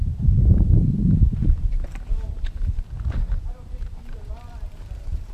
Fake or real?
fake